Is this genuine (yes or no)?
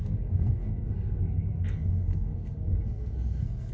no